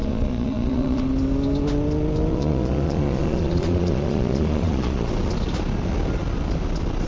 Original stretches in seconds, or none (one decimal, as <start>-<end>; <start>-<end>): 1.0-2.3; 5.1-7.1